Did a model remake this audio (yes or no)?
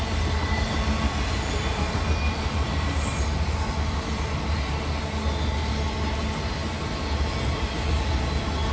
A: no